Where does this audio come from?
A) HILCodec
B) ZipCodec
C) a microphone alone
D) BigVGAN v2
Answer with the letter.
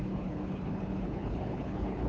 A